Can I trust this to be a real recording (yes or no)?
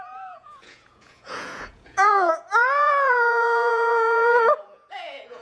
no